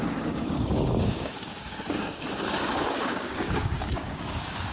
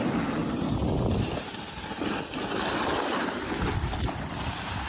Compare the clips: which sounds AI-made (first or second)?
first